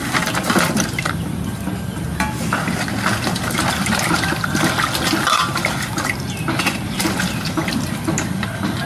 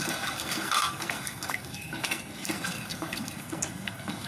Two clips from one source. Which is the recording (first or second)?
first